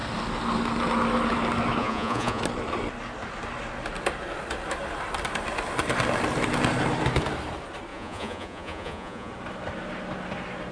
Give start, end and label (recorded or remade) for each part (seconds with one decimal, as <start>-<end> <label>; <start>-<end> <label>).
0.0-1.8 recorded; 1.8-2.4 remade; 2.4-7.9 recorded; 7.9-9.3 remade; 9.3-10.7 recorded